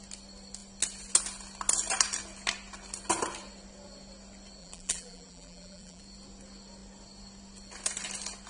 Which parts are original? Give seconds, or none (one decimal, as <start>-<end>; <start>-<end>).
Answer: 0.0-4.6; 6.0-8.5